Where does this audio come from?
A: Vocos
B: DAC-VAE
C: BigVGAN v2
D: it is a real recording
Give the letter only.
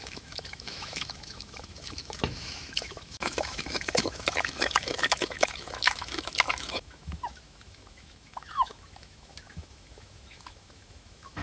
B